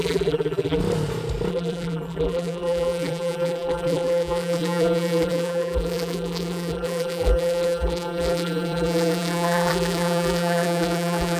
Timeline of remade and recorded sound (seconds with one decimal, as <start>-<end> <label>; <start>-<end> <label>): 0.0-0.8 remade; 0.8-1.5 recorded; 1.5-11.4 remade